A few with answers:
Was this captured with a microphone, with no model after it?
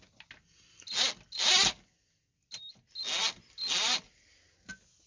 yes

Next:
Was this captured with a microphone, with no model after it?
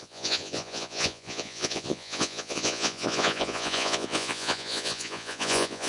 no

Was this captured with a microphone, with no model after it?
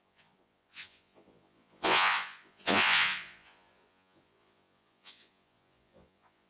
no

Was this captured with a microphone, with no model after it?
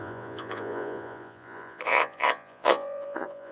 no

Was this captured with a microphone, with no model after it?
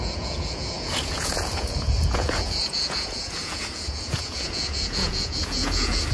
no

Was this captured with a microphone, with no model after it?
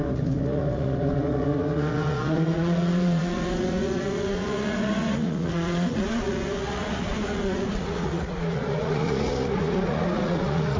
no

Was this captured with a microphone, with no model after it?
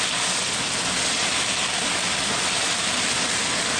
yes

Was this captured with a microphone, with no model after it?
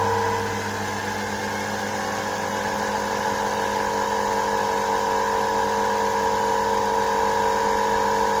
yes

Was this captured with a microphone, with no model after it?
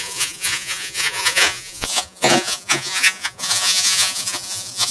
no